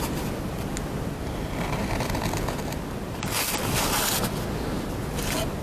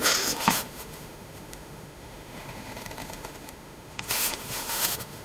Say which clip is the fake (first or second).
second